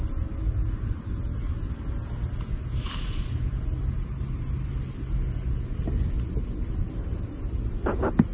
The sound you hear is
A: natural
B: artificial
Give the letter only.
A